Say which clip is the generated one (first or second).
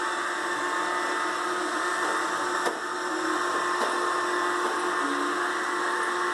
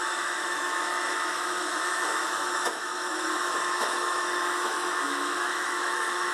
second